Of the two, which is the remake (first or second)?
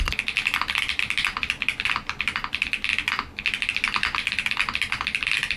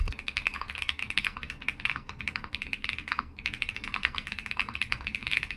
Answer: second